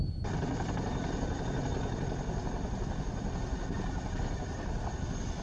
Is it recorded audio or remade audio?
recorded